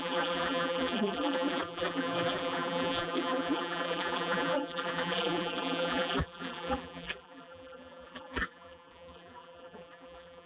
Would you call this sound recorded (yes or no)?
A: no